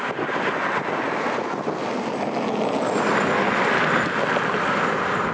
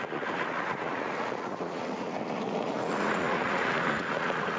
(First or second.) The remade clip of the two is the second